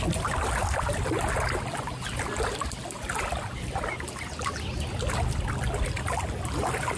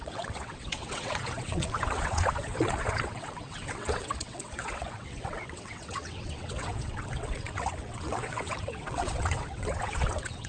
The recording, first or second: first